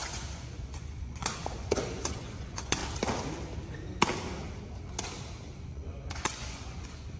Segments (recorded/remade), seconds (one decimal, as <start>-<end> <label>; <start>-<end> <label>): 0.0-2.8 remade; 2.8-5.6 recorded; 5.6-7.2 remade